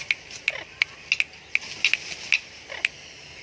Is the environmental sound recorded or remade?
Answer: recorded